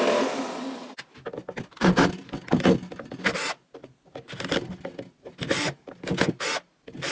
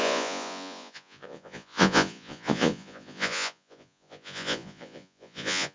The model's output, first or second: second